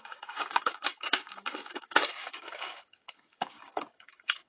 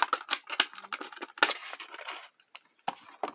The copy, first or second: first